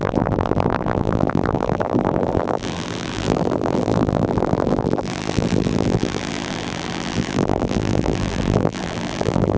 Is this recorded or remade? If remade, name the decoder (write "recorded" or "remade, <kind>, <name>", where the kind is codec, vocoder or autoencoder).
remade, vocoder, BigVGAN v2